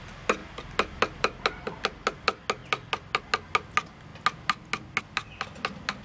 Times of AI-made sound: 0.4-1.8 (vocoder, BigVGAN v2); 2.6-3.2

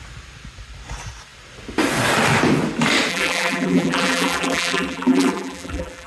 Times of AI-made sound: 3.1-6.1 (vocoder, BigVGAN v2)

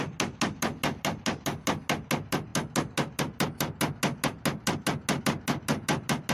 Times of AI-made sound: none

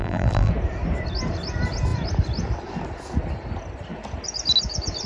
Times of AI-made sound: 0.0-0.5 (vocoder, BigVGAN v2)

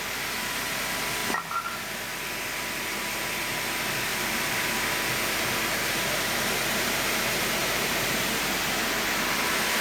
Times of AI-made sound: 4.1-4.9 (vocoder, BigVGAN v2); 7.6-8.2

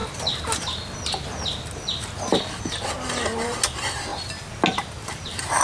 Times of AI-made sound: none

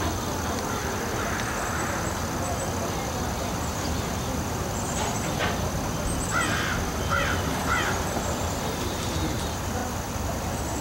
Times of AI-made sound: 0.0-0.8 (vocoder, BigVGAN v2); 3.4-5.4; 6.9-9.8; 10.3-10.8